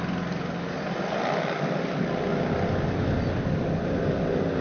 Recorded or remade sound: recorded